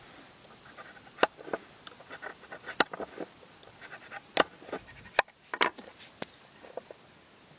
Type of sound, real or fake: real